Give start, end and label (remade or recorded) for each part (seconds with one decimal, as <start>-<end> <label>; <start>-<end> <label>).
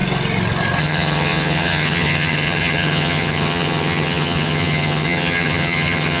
0.0-0.8 recorded; 0.8-6.2 remade